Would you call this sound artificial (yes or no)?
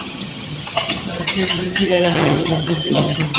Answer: yes